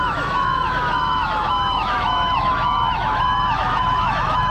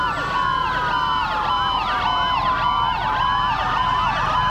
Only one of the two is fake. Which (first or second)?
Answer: first